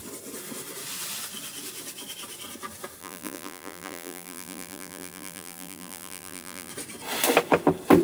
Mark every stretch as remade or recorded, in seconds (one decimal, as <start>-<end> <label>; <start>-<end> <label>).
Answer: 0.0-3.0 recorded; 3.0-6.7 remade; 6.7-8.0 recorded